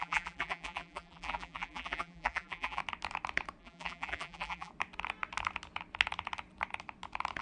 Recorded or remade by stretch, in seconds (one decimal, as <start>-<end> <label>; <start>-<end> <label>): 0.0-2.8 remade; 2.8-3.6 recorded; 3.6-4.7 remade; 4.7-7.4 recorded